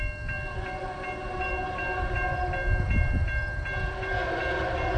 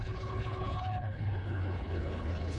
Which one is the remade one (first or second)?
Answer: second